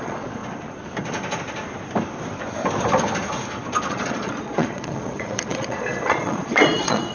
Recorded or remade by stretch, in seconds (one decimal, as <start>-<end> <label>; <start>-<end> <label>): 0.0-0.4 remade; 0.4-3.9 recorded; 3.9-7.1 remade